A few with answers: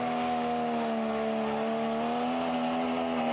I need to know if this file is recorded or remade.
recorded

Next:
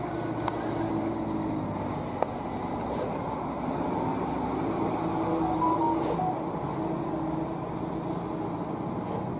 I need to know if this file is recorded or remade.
recorded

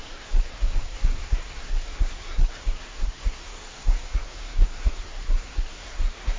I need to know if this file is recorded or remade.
remade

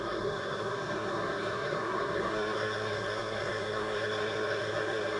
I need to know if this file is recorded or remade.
remade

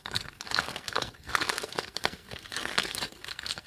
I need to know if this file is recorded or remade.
remade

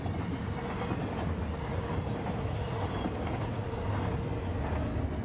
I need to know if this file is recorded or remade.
recorded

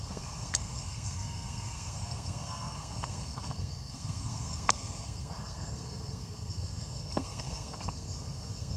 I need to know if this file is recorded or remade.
remade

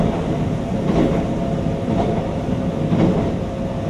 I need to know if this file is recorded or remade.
recorded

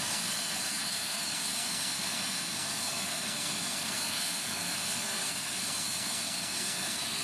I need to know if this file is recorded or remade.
remade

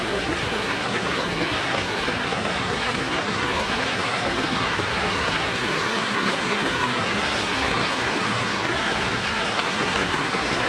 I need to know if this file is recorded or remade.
remade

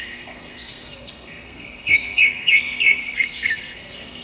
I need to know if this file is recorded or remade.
remade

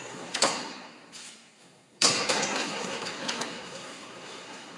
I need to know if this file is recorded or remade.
remade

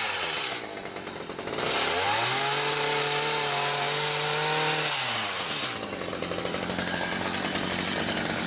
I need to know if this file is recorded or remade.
recorded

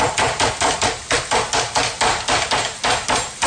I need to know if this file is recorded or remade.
recorded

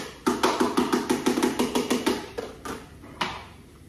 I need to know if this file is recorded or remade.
recorded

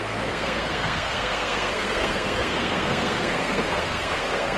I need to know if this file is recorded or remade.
remade